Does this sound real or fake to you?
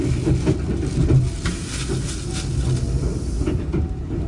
real